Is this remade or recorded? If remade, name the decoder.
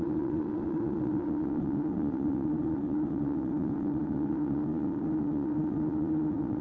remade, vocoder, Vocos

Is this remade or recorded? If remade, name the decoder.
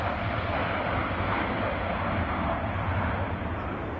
recorded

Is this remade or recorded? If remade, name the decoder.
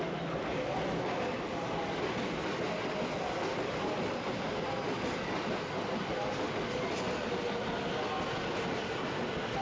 recorded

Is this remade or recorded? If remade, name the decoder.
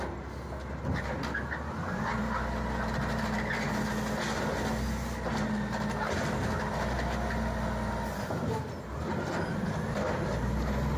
recorded